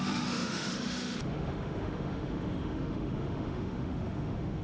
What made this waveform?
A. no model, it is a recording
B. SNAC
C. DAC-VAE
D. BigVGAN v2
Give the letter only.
C